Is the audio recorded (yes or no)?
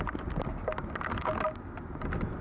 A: yes